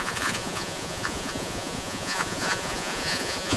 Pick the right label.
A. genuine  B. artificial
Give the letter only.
B